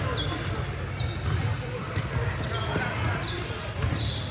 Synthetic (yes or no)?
no